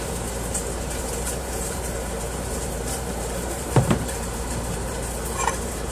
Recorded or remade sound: remade